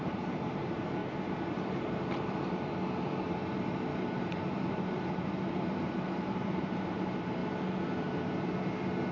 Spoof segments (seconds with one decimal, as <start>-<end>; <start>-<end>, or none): 0.0-1.0; 1.6-7.4